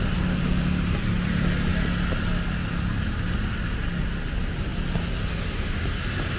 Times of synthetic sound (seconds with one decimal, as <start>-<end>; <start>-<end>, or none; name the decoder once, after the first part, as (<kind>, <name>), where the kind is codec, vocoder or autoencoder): none